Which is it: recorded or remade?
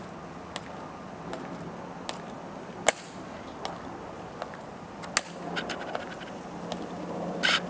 recorded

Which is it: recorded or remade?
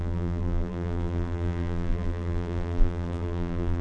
remade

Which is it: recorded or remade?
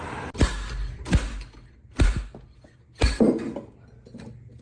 recorded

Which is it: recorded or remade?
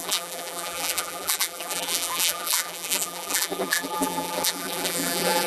remade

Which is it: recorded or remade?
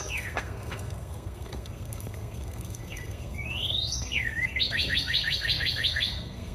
remade